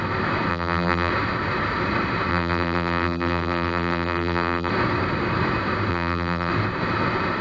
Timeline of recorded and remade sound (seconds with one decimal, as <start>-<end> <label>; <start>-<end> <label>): 0.0-0.5 recorded; 0.5-1.1 remade; 1.1-2.3 recorded; 2.3-4.7 remade; 4.7-5.9 recorded; 5.9-6.5 remade; 6.5-7.4 recorded